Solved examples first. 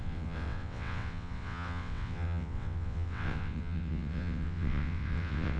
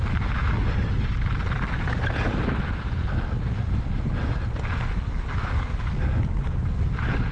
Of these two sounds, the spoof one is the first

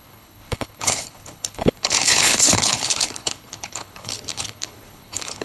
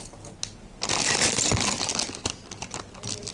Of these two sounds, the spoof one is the first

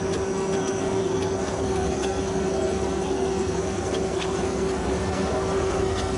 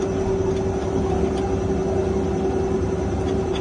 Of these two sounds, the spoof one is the first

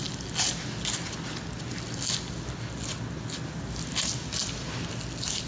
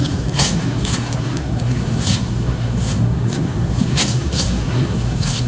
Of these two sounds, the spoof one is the second